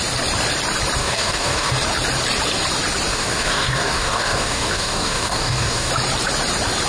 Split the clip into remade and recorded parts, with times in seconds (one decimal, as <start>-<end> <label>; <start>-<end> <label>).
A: 0.0-1.0 recorded; 1.0-1.7 remade; 1.7-3.1 recorded; 3.1-5.9 remade; 5.9-6.9 recorded